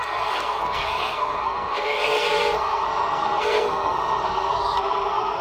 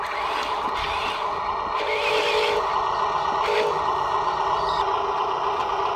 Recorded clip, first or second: second